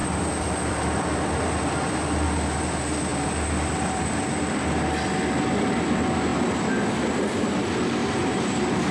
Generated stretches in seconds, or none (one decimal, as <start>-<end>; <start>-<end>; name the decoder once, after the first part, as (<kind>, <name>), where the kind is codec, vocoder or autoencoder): 0.0-1.0 (vocoder, BigVGAN v2); 3.1-4.3; 8.0-8.9